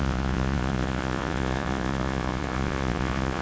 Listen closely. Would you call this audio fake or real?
fake